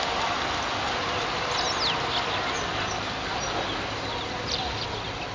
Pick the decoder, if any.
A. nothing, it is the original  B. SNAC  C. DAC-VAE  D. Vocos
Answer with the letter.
A